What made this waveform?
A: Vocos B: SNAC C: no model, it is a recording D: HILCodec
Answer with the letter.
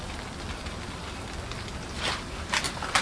C